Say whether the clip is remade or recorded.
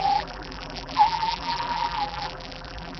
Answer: remade